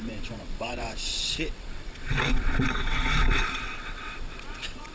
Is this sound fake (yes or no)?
yes